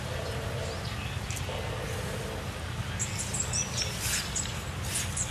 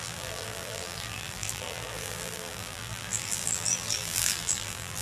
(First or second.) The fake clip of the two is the second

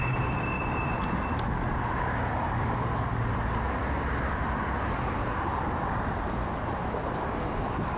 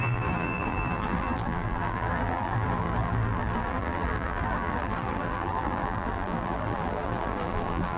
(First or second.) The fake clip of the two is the second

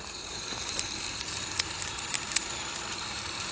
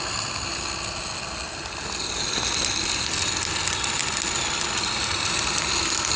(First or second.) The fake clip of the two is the first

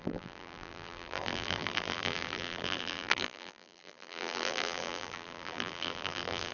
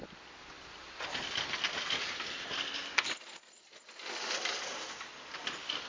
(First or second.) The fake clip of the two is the first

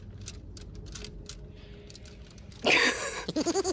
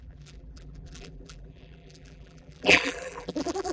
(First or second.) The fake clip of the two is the second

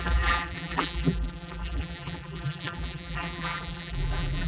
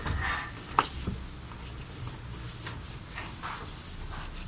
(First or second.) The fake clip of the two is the first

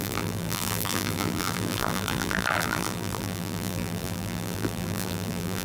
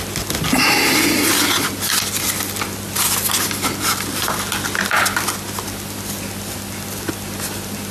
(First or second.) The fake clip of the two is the first